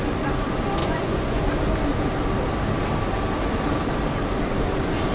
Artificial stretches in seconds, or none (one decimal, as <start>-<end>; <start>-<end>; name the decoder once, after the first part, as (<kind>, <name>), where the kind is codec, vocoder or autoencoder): 0.8-1.4 (vocoder, Vocos)